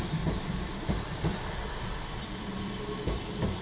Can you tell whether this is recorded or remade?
remade